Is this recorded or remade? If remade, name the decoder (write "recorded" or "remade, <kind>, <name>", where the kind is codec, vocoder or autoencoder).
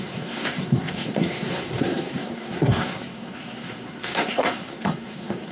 remade, codec, SNAC